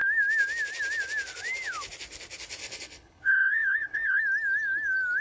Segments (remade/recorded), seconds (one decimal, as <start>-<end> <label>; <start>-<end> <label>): 0.0-2.6 recorded; 2.6-4.2 remade; 4.2-5.2 recorded